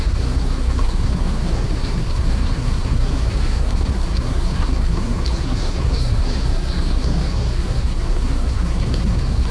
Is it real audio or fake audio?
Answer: fake